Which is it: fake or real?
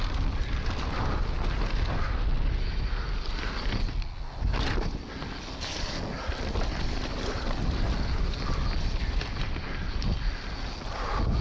real